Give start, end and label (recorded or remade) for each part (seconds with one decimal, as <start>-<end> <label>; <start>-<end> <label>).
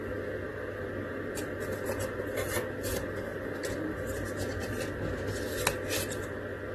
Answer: 0.0-3.3 recorded; 3.3-4.3 remade; 4.3-6.7 recorded